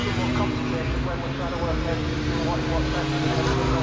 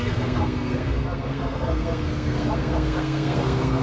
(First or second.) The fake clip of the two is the second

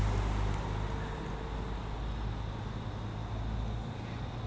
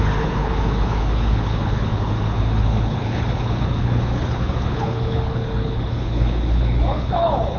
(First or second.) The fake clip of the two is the second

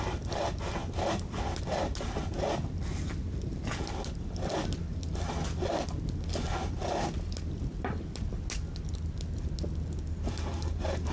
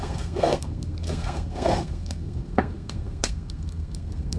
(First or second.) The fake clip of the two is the second